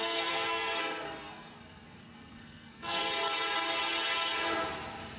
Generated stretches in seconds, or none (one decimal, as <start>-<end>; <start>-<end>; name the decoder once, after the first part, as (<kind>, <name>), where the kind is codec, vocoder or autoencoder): 0.0-3.0 (codec, SNAC)